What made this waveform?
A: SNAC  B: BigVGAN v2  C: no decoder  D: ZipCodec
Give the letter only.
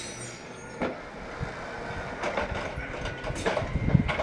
C